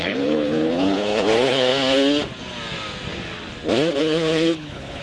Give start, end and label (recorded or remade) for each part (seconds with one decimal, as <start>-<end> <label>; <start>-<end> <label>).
0.0-1.7 remade; 1.7-4.0 recorded; 4.0-5.0 remade